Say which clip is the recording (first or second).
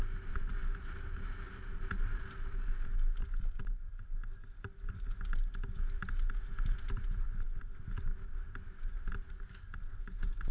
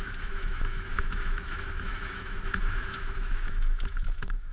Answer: first